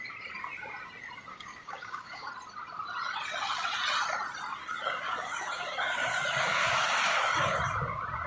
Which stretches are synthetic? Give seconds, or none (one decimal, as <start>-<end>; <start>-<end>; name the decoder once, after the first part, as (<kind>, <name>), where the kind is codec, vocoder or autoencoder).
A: 1.3-2.3 (codec, DAC); 4.5-7.6